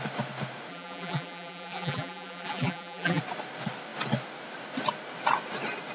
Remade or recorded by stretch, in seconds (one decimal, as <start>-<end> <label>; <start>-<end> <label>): 0.0-0.7 recorded; 0.7-3.2 remade; 3.2-5.9 recorded